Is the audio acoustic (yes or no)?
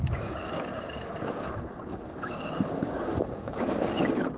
no